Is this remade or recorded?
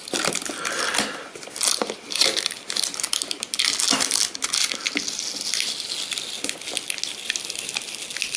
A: recorded